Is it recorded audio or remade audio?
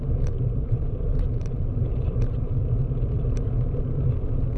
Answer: remade